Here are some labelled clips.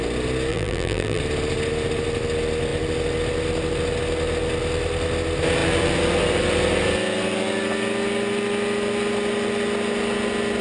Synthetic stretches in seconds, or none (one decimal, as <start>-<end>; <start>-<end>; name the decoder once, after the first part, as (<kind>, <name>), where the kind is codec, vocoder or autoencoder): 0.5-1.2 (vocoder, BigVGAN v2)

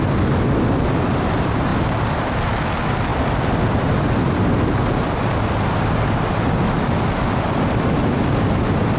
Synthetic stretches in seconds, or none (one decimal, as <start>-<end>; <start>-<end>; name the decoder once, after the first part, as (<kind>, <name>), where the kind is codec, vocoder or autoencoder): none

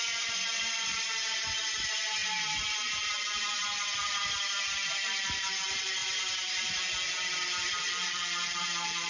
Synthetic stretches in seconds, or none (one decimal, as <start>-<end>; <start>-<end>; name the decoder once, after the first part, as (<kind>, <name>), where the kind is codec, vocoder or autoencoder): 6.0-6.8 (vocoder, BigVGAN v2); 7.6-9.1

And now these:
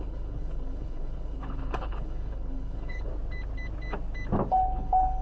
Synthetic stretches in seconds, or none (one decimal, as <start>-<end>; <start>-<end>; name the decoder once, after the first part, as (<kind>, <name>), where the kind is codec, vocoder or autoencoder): 0.0-3.1 (codec, HILCodec); 4.5-5.2